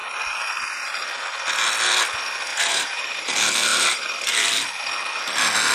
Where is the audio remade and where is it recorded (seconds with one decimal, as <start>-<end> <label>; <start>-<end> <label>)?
0.0-2.5 recorded; 2.5-3.2 remade; 3.2-3.7 recorded; 3.7-4.3 remade; 4.3-5.7 recorded